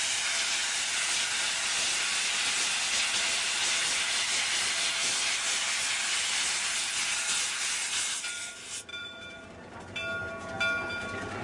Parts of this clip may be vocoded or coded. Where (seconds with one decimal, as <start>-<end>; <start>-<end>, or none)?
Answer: 8.9-9.8